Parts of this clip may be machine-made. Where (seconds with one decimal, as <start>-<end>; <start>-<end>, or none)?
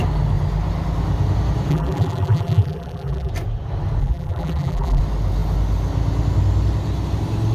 1.7-3.3; 4.0-5.0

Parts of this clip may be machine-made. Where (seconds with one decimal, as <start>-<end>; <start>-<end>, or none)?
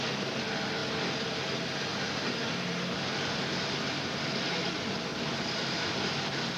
1.9-3.1; 5.1-6.0